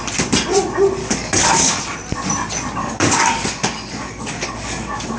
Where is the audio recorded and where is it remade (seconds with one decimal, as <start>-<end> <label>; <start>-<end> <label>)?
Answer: 0.0-1.0 recorded; 1.0-1.8 remade; 1.8-2.8 recorded; 2.8-5.2 remade